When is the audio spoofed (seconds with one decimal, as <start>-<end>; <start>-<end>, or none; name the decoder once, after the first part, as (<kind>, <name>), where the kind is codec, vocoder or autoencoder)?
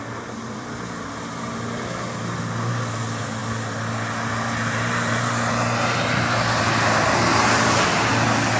7.3-8.1 (vocoder, BigVGAN v2)